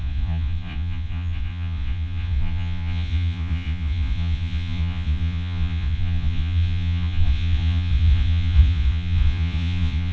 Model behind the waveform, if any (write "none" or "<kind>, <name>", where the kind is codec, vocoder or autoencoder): vocoder, Vocos